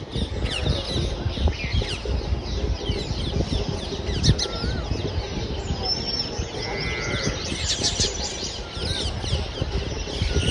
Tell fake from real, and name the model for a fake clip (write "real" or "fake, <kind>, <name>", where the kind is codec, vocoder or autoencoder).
real